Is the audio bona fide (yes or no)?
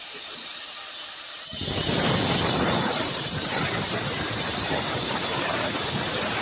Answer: no